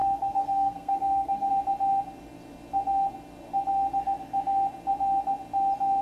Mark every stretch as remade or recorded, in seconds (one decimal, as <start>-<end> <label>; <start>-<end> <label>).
0.0-1.5 remade; 1.5-6.0 recorded